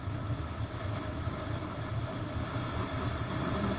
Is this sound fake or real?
fake